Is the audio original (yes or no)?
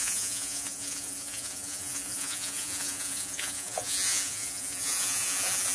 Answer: no